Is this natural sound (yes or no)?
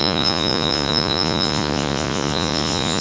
no